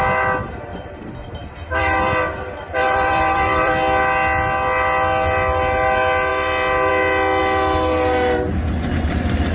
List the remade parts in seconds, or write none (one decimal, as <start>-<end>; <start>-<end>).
0.7-3.7